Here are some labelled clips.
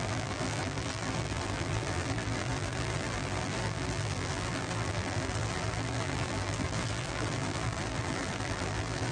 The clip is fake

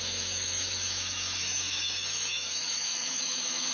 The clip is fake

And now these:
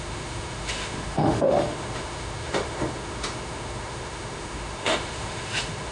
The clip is fake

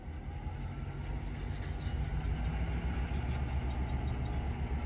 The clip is real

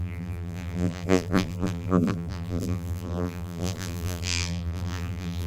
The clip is fake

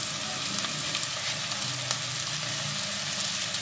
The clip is real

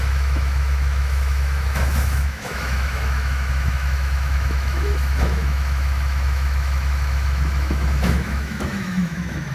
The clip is fake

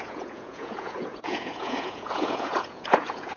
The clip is fake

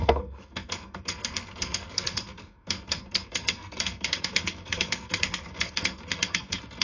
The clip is fake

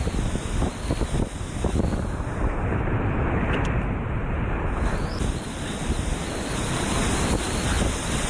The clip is real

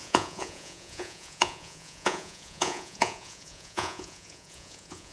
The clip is fake